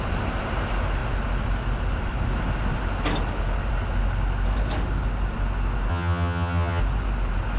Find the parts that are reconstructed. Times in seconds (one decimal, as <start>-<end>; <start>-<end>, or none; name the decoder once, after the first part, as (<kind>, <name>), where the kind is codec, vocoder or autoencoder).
5.9-6.8 (vocoder, HiFi-GAN)